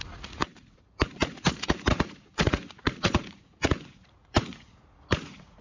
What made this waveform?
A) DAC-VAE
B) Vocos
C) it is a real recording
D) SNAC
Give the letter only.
B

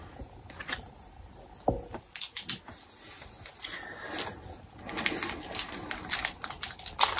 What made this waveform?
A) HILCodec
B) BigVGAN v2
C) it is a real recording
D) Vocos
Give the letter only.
C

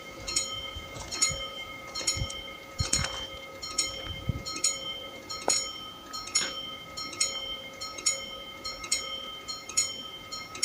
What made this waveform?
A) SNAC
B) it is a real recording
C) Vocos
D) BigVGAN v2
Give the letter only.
C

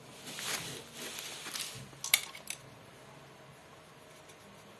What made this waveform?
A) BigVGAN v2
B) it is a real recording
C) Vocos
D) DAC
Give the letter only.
B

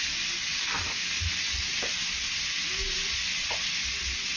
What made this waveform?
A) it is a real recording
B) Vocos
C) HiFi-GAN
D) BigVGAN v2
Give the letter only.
A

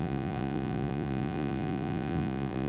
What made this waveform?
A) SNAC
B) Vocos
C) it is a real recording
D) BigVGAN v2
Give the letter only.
B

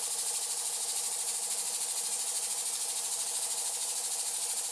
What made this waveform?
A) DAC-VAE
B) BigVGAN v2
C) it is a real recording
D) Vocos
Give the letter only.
C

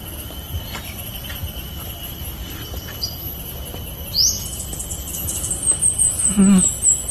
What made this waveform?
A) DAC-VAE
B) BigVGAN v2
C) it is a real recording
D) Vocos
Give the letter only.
C